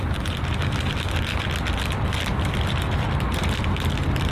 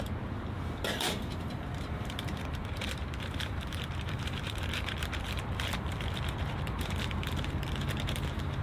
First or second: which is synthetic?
second